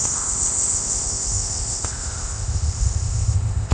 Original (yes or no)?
no